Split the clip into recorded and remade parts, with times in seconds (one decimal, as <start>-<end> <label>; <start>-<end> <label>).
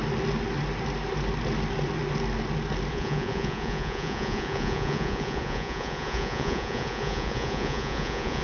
0.0-2.9 recorded; 2.9-8.4 remade